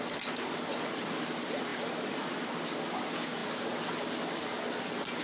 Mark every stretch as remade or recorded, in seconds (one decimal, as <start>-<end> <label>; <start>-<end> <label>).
0.0-5.2 recorded